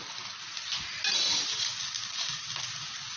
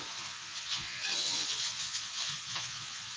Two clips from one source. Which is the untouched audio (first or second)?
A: first